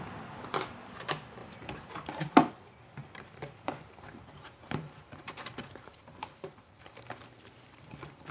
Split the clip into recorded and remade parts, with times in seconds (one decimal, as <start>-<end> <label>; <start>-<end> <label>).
0.0-1.4 recorded; 1.4-2.5 remade; 2.5-3.0 recorded; 3.0-8.3 remade